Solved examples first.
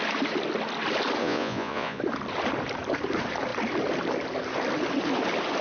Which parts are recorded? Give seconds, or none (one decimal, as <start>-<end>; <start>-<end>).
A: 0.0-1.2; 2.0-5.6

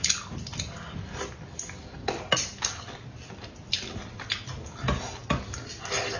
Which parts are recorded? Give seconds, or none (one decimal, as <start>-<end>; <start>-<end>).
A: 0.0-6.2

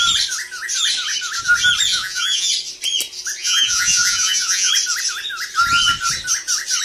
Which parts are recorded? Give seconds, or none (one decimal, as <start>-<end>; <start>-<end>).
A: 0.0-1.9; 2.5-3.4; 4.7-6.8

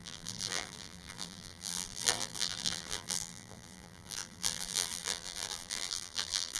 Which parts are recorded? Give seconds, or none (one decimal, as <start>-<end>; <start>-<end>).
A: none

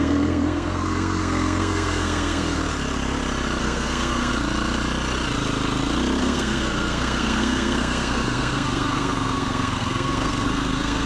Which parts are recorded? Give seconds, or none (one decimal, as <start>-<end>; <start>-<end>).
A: 2.6-3.6; 4.3-6.2